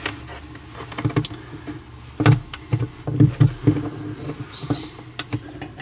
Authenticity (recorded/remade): recorded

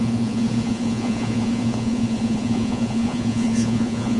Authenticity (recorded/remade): remade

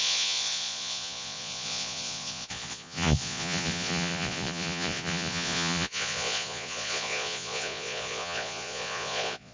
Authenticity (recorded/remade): remade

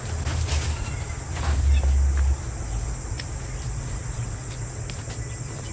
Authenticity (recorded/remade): recorded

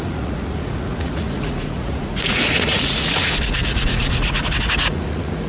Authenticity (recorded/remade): remade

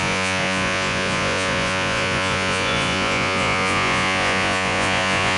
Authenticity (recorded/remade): remade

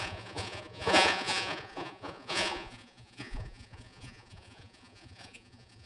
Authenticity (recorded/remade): remade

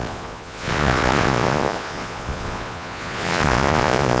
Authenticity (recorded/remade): remade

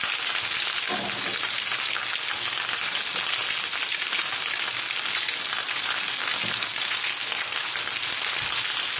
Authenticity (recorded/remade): recorded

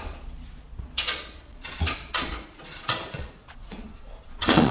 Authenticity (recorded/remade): remade